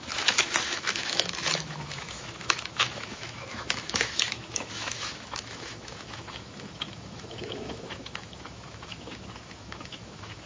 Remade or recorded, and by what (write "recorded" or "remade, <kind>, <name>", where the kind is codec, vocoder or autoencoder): remade, autoencoder, DAC-VAE